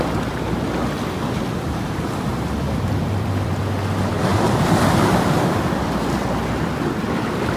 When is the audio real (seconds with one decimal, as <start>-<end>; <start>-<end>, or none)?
0.0-2.3; 3.5-4.3; 6.3-7.6